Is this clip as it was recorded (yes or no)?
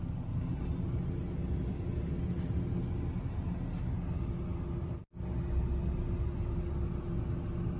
yes